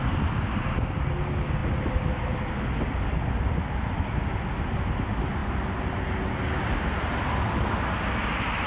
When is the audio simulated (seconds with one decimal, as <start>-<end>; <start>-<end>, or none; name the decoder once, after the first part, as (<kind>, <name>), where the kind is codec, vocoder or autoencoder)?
none